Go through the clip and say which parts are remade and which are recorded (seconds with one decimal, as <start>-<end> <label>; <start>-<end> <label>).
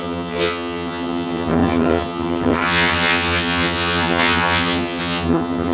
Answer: 0.0-5.7 remade